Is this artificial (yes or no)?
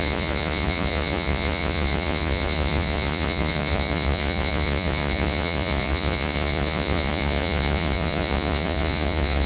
yes